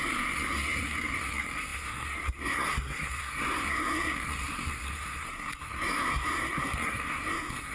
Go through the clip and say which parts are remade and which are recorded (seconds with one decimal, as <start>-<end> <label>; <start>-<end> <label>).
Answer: 0.0-7.7 remade